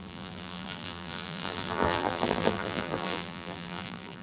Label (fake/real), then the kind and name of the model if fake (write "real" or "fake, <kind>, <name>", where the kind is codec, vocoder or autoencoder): fake, vocoder, BigVGAN v2